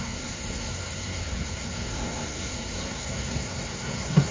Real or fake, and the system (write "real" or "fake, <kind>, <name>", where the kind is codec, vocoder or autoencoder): fake, codec, SNAC